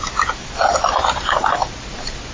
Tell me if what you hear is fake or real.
real